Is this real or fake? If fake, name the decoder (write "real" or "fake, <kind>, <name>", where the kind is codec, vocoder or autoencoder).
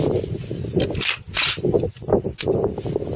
real